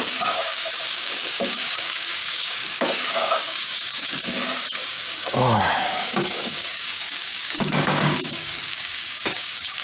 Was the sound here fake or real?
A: fake